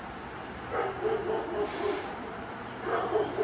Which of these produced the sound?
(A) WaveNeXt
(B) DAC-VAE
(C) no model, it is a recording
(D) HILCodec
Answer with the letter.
C